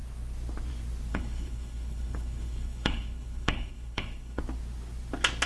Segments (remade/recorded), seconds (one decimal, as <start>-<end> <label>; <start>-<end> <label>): 0.0-1.1 recorded; 1.1-4.4 remade; 4.4-5.5 recorded